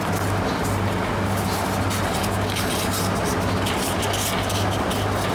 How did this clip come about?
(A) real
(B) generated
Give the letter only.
A